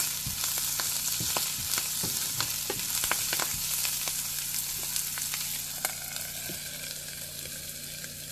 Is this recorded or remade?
recorded